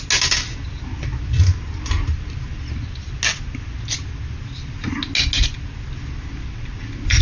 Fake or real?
real